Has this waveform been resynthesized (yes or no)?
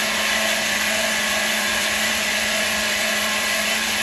yes